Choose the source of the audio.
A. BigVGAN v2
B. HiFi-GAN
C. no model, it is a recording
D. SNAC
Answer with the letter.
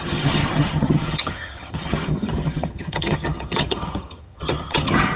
B